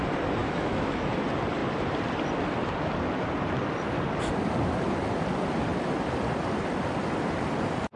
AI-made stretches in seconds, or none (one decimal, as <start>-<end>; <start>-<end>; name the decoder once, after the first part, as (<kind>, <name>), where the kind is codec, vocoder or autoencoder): 0.4-1.1 (autoencoder, DAC-VAE)